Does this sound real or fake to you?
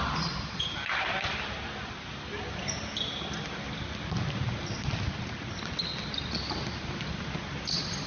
real